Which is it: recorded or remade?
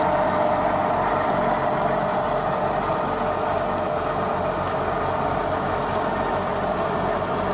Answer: recorded